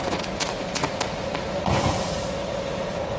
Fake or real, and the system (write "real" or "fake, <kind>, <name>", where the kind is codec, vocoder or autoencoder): fake, vocoder, Vocos